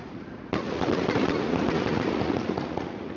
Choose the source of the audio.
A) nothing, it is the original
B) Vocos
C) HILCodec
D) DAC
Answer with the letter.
B